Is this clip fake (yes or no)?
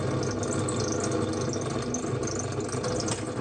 no